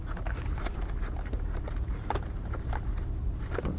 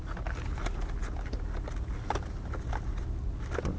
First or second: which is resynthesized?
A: first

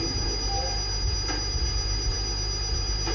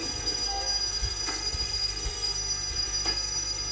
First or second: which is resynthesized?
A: second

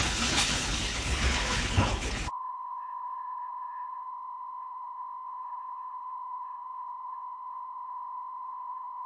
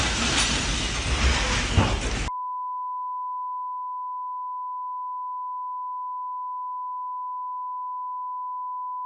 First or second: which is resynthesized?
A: first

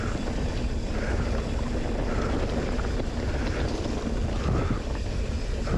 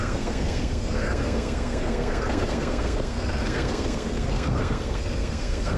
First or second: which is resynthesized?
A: second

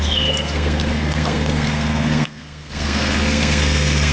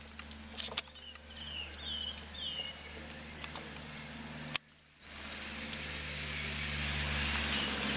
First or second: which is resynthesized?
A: first